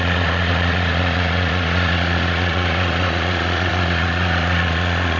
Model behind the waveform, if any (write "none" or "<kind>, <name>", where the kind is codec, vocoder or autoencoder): vocoder, Vocos